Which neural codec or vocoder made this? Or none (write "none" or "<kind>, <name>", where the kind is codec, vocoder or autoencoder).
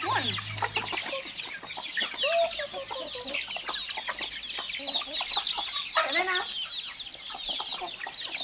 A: none